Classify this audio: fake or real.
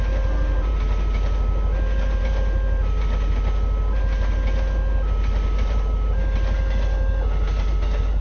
real